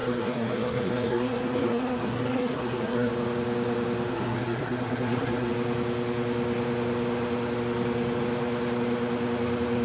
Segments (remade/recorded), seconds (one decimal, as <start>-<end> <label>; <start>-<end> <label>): 0.0-3.1 remade; 3.1-4.1 recorded; 4.1-5.5 remade; 5.5-9.8 recorded